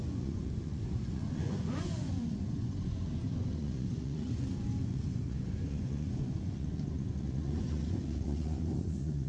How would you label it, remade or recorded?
remade